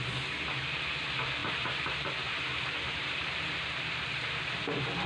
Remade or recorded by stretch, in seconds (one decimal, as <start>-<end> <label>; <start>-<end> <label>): 0.0-1.4 recorded; 1.4-4.5 remade; 4.5-5.1 recorded

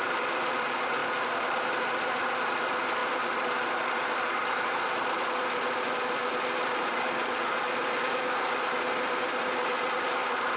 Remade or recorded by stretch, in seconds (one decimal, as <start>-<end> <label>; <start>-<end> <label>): 0.0-10.6 recorded

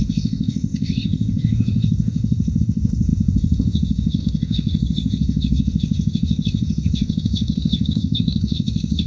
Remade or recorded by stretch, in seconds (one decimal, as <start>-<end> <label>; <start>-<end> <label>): 0.0-9.1 remade

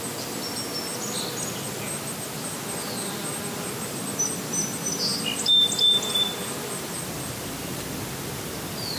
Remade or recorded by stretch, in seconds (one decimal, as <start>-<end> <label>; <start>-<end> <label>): 0.0-9.0 recorded

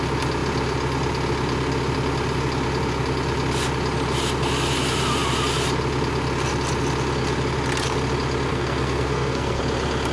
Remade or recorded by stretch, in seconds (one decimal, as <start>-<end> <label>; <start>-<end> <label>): 0.0-8.5 recorded; 8.5-9.6 remade; 9.6-10.1 recorded

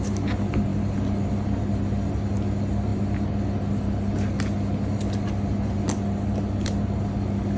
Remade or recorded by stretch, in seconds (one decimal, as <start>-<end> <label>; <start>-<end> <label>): 0.0-7.6 recorded